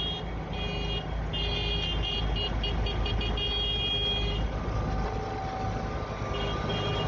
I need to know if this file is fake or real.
real